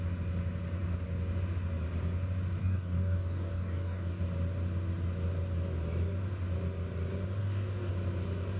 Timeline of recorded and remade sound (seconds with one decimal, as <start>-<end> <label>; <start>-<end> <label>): 0.0-2.6 recorded; 2.6-4.2 remade; 4.2-7.4 recorded; 7.4-7.9 remade; 7.9-8.6 recorded